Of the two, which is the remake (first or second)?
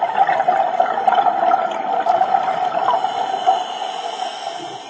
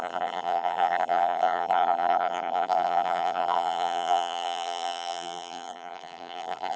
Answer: second